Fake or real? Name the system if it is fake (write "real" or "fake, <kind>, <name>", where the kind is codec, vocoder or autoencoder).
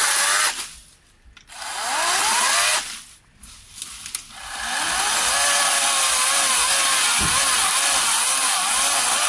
real